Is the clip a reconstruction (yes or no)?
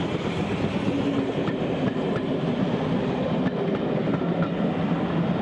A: no